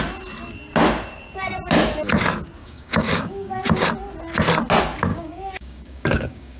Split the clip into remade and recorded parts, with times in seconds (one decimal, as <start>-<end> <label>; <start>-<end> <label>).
0.0-2.6 recorded; 2.6-3.9 remade; 3.9-5.1 recorded; 5.1-6.6 remade